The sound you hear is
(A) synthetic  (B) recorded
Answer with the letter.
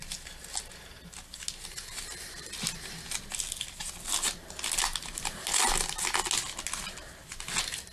B